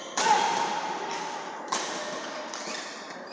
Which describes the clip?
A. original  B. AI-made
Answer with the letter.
A